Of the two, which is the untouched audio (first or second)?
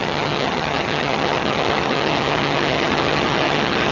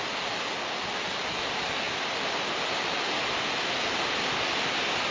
second